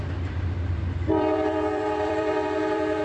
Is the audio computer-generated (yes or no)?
yes